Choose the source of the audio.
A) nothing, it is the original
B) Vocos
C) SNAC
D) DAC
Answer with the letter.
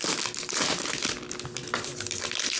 A